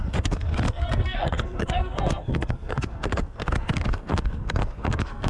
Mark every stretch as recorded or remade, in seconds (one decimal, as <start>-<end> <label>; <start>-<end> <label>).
0.0-5.3 remade